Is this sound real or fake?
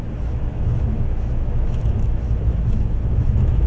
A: fake